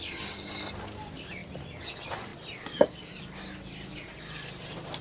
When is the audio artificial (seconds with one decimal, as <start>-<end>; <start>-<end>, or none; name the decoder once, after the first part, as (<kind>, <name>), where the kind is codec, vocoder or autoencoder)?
0.0-5.0 (vocoder, BigVGAN v2)